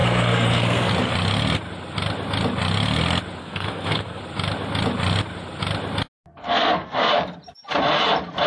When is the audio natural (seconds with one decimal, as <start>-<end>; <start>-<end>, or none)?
0.9-3.4; 4.2-6.4; 7.1-8.5